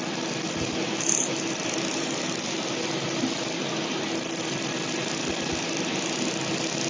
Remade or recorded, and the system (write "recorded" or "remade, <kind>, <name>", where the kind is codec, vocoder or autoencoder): recorded